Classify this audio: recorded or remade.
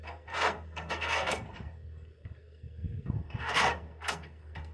remade